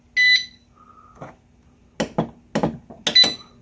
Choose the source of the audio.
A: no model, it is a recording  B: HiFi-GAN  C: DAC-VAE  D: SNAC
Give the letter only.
A